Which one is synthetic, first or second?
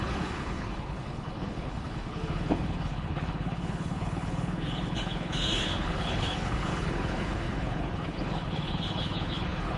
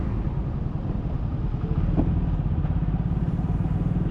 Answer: first